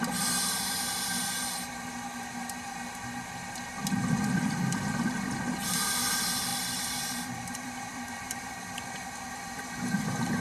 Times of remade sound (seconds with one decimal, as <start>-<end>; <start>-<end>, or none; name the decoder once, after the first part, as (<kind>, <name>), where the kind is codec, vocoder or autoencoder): 4.0-5.0 (vocoder, BigVGAN v2); 6.5-10.4